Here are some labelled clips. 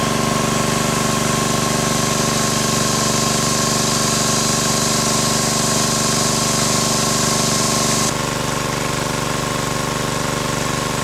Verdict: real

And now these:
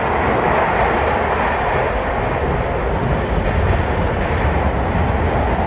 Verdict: real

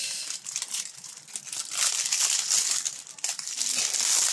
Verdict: real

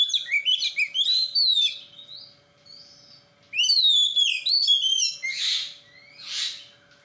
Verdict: real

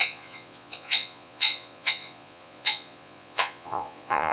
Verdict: fake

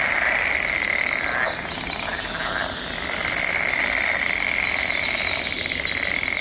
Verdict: real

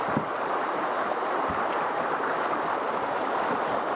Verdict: real